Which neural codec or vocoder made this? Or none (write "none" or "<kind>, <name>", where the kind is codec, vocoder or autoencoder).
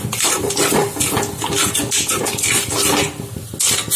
none